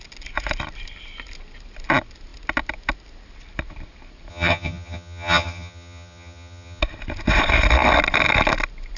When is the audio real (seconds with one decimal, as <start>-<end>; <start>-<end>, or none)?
0.0-4.3; 6.8-9.0